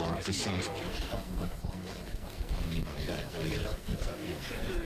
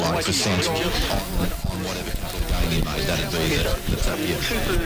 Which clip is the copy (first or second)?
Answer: first